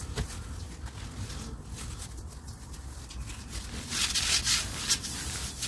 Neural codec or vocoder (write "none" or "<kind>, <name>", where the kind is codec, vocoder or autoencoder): none